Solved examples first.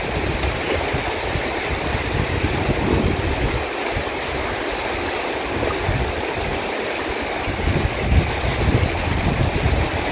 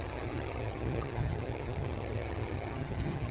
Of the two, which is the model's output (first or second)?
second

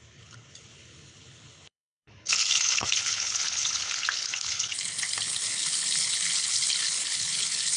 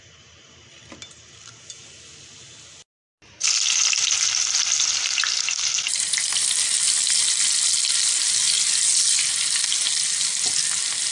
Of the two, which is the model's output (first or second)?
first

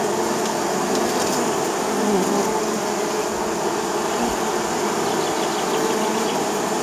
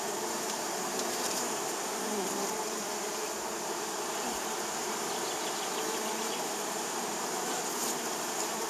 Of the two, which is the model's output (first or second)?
second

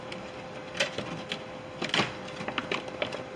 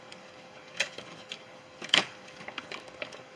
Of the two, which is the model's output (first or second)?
second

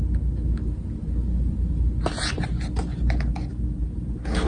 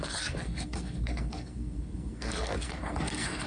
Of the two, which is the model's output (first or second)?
second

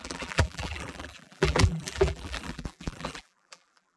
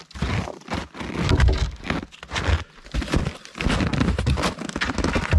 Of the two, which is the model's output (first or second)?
first